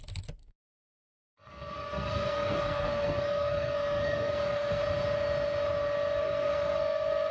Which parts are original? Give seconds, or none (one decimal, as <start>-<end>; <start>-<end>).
0.0-0.4; 4.8-6.2